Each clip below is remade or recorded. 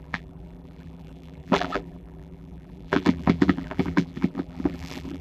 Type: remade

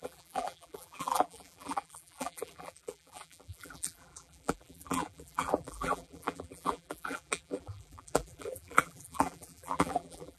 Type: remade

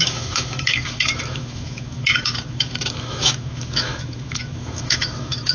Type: remade